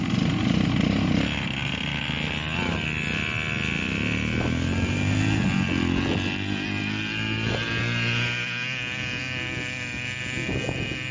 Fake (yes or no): no